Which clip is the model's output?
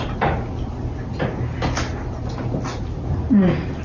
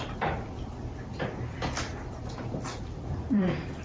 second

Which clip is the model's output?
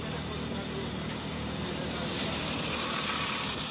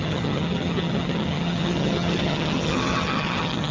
second